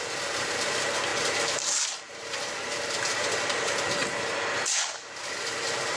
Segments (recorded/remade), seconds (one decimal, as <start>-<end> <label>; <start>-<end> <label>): 0.0-1.1 recorded; 1.1-3.7 remade; 3.7-5.0 recorded; 5.0-6.0 remade